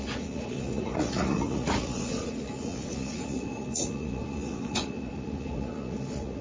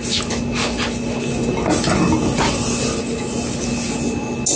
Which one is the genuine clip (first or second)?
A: second